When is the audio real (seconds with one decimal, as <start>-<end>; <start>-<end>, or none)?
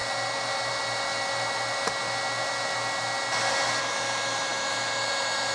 0.0-5.5